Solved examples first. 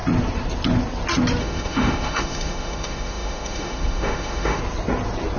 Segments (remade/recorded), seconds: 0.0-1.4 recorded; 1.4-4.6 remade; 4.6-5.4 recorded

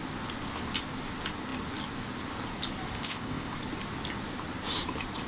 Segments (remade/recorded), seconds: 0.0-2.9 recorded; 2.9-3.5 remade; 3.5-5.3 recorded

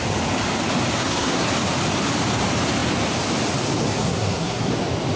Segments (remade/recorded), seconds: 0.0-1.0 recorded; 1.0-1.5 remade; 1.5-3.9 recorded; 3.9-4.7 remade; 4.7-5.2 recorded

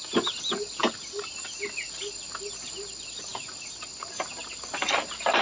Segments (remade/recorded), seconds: 0.0-5.4 recorded

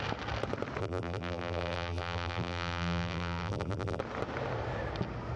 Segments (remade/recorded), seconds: 0.0-0.8 recorded; 0.8-4.0 remade; 4.0-5.4 recorded